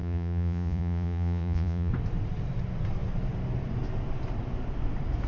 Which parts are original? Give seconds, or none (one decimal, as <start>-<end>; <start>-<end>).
1.9-5.3